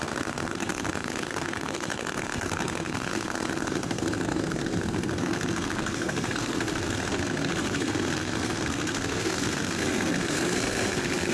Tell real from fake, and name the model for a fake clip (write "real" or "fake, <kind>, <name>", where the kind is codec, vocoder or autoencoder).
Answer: fake, codec, SNAC